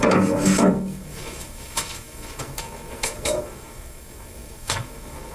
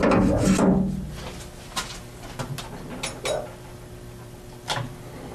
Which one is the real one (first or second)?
second